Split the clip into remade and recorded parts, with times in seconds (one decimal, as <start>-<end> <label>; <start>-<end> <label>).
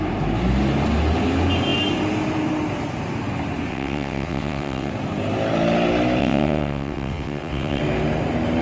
0.0-3.7 recorded; 3.7-4.9 remade; 4.9-6.2 recorded; 6.2-7.8 remade; 7.8-8.6 recorded